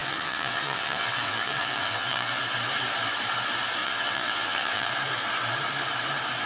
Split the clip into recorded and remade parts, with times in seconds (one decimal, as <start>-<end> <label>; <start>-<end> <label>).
0.0-2.4 remade; 2.4-3.8 recorded; 3.8-4.9 remade; 4.9-6.5 recorded

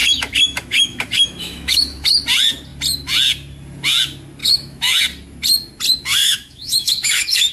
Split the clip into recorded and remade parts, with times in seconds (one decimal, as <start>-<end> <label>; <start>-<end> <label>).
0.0-2.1 remade; 2.1-4.4 recorded; 4.4-5.0 remade; 5.0-6.2 recorded; 6.2-7.5 remade

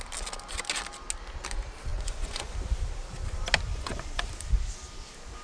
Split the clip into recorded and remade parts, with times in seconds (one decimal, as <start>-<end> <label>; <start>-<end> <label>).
0.0-1.9 recorded; 1.9-2.5 remade; 2.5-3.7 recorded; 3.7-4.2 remade; 4.2-5.4 recorded

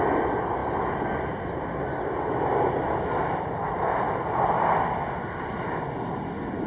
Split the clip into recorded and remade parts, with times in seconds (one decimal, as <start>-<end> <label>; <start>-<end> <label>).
0.0-6.7 recorded

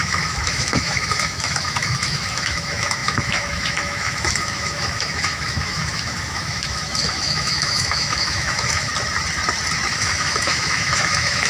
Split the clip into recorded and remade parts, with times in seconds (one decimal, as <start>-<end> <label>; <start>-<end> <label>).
0.0-8.9 remade; 8.9-9.9 recorded; 9.9-11.5 remade

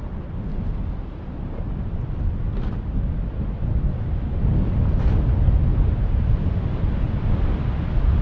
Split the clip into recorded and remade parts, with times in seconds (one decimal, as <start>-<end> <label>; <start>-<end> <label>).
0.0-0.5 recorded; 0.5-2.0 remade; 2.0-5.7 recorded; 5.7-7.3 remade; 7.3-8.2 recorded

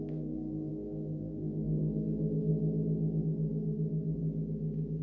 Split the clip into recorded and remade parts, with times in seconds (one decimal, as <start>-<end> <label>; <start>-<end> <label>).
0.0-2.5 remade; 2.5-3.2 recorded; 3.2-4.2 remade; 4.2-5.0 recorded